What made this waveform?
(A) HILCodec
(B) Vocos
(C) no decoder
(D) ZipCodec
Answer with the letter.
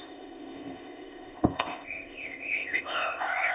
D